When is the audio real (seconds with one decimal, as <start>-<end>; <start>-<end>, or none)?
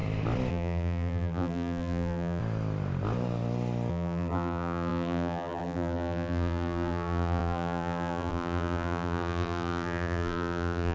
0.0-0.5; 2.4-3.9